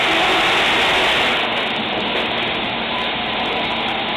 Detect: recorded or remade recorded